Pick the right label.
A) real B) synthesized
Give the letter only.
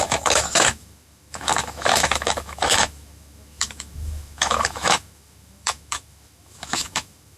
B